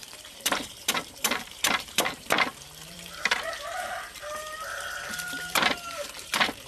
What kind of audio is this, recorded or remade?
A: remade